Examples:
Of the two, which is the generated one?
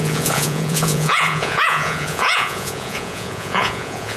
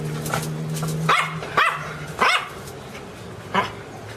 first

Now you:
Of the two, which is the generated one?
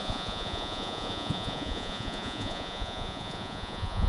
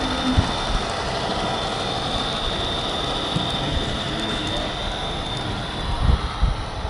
first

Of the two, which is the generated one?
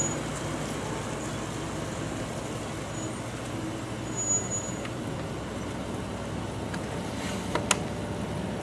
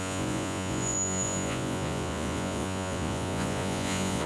second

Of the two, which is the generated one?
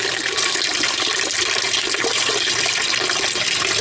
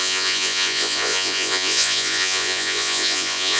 second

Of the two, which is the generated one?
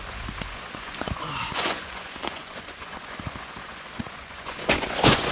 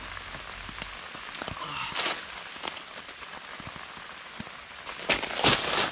first